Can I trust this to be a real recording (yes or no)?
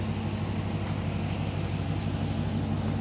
yes